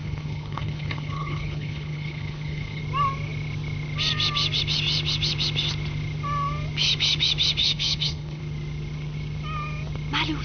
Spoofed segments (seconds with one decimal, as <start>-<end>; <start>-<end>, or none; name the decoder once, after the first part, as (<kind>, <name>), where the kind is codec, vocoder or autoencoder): 0.0-2.8 (codec, HILCodec); 7.6-8.4

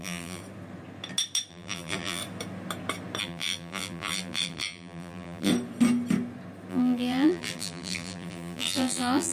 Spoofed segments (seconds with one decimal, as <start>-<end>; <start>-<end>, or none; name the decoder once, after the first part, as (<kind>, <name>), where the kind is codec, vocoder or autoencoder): 0.0-0.4 (vocoder, BigVGAN v2); 1.5-2.2; 3.2-5.5; 6.7-9.3

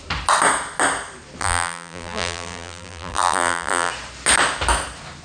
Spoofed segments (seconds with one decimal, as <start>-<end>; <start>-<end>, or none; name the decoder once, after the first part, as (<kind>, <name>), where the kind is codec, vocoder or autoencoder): 1.4-3.9 (vocoder, BigVGAN v2)

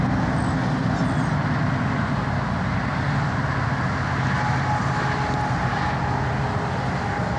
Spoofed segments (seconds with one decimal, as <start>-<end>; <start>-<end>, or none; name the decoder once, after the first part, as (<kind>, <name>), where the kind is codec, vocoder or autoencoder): none